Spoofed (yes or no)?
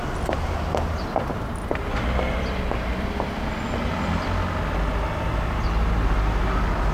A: no